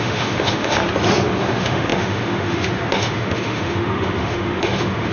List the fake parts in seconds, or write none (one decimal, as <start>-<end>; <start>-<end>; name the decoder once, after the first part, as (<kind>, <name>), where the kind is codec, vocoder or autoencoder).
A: 0.0-0.8 (autoencoder, DAC-VAE); 1.4-5.1